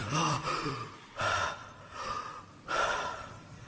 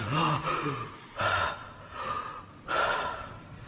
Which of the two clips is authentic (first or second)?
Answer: second